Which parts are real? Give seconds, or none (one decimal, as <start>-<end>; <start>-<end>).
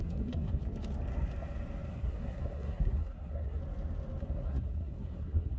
0.6-1.9; 3.6-4.2